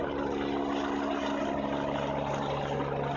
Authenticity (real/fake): real